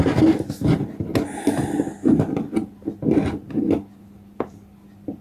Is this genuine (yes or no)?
yes